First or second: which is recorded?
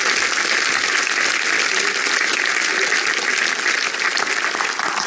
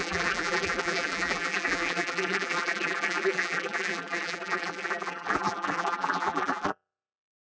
first